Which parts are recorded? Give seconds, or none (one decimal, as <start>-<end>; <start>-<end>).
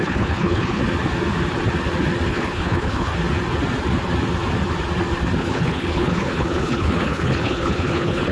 0.8-2.3; 3.1-5.4